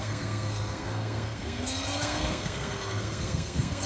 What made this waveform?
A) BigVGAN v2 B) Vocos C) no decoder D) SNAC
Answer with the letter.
D